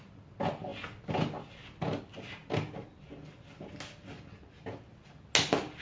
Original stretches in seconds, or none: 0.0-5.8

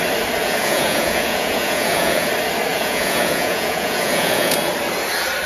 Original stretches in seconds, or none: 0.0-0.4; 2.3-2.7; 4.7-5.5